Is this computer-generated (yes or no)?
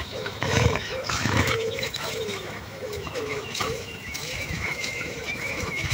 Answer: yes